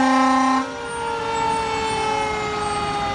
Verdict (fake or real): real